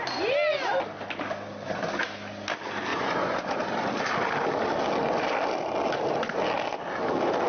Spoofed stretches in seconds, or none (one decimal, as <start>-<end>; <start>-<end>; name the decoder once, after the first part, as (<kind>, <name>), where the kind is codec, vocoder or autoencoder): 2.9-3.6 (vocoder, Vocos)